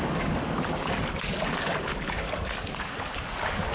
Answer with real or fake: fake